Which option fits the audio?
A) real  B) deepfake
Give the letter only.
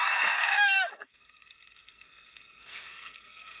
B